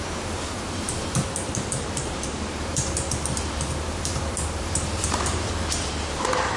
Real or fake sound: fake